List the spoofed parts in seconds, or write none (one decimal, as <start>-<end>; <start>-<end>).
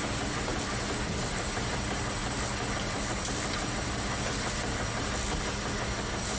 0.0-2.2; 6.0-6.4